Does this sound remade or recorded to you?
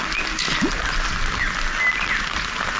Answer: recorded